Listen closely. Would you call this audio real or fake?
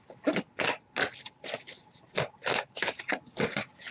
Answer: real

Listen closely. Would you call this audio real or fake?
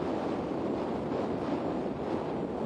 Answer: real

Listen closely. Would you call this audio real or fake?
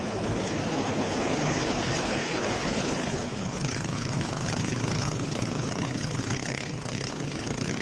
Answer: fake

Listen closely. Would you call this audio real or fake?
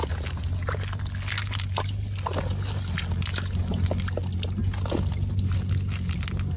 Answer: real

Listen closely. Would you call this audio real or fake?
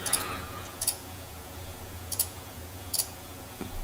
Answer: fake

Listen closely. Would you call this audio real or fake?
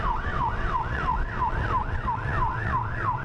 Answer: fake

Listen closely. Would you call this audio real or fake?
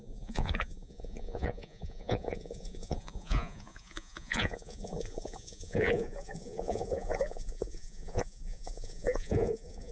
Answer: fake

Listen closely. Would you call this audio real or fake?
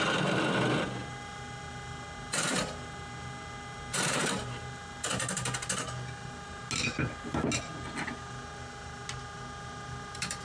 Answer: real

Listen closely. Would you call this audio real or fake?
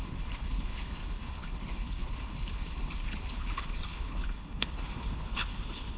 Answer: fake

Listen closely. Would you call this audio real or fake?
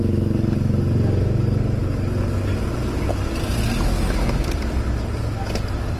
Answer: real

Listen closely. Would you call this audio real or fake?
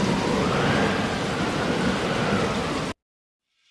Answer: real